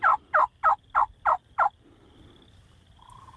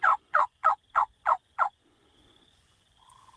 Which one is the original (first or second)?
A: first